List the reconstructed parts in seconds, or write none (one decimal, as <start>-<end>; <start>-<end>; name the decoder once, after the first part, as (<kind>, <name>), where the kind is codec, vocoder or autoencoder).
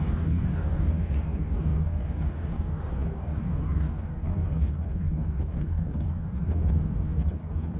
0.0-7.8 (codec, DAC)